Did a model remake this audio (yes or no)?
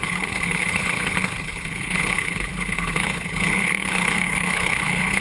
yes